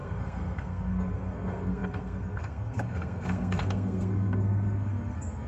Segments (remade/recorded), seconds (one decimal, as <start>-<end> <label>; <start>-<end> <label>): 0.0-5.5 remade